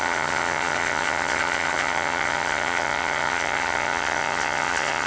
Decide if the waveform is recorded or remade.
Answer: remade